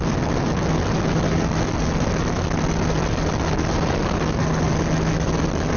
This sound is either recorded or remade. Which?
recorded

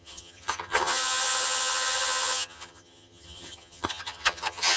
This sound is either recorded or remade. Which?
remade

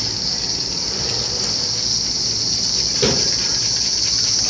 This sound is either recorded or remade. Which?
recorded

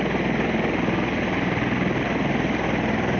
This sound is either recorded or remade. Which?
recorded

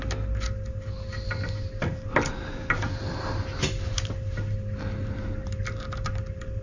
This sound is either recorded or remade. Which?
recorded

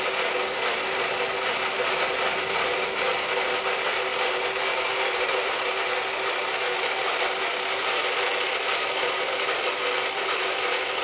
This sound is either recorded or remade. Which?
recorded